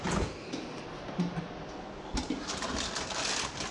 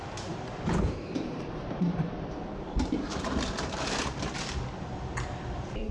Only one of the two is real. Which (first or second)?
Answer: first